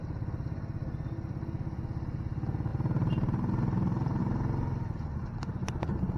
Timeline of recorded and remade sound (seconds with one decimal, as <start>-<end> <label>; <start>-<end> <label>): 0.0-2.7 recorded; 2.7-4.2 remade; 4.2-6.2 recorded